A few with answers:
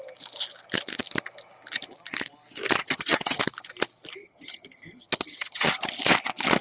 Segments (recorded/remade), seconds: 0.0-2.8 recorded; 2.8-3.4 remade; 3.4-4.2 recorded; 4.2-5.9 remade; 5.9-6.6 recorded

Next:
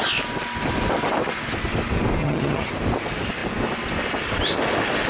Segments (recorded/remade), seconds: 0.0-2.2 recorded; 2.2-2.7 remade; 2.7-5.1 recorded

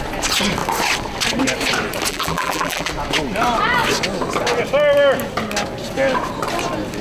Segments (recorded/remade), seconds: 0.0-2.1 recorded; 2.1-2.9 remade; 2.9-7.0 recorded

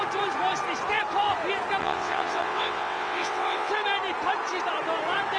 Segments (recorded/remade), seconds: 0.0-1.8 recorded; 1.8-3.7 remade; 3.7-5.4 recorded